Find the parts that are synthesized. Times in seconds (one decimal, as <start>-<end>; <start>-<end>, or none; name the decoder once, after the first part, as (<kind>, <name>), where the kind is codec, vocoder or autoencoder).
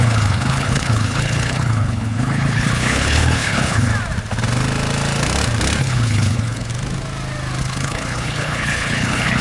0.0-3.9 (codec, HILCodec); 5.8-6.7; 7.6-9.4